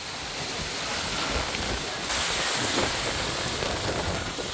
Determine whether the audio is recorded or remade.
recorded